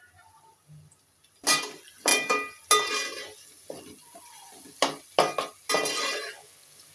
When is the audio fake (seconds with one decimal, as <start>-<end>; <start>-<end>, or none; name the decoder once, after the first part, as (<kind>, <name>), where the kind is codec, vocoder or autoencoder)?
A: none